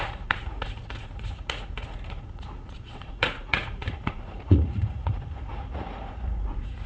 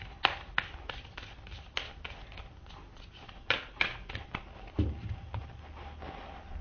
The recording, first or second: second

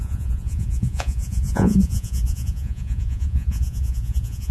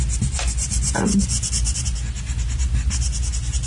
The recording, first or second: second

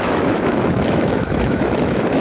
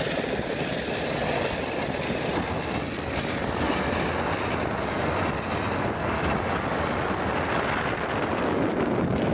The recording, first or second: second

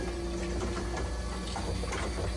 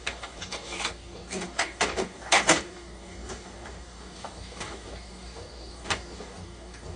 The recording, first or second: first